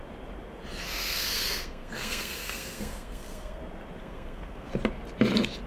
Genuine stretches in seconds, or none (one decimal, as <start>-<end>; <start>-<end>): 0.0-0.8; 3.6-4.0; 4.7-5.7